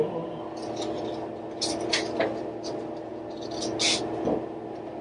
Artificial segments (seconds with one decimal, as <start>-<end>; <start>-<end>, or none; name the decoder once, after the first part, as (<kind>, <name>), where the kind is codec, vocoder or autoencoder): none